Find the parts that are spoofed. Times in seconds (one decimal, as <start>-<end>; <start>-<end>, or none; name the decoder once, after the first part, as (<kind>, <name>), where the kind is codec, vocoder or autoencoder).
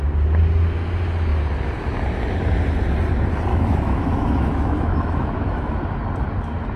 3.5-5.8 (autoencoder, DAC-VAE)